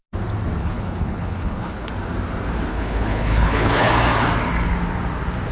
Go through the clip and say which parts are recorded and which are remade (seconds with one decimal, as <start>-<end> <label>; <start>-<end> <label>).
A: 0.0-0.6 recorded; 0.6-1.9 remade; 1.9-2.7 recorded; 2.7-3.9 remade; 3.9-5.5 recorded